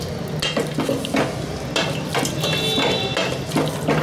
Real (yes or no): yes